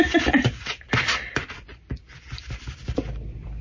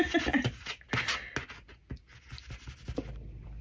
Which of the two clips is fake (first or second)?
first